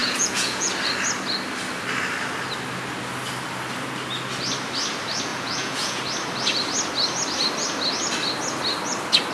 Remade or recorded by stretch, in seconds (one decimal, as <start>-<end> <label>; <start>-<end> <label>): 0.0-0.7 remade; 0.7-5.3 recorded; 5.3-6.0 remade; 6.0-9.3 recorded